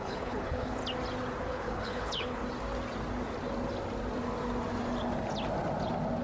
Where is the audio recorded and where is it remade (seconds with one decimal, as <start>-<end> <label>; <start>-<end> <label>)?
0.0-0.8 remade; 0.8-1.5 recorded; 1.5-2.4 remade; 2.4-6.2 recorded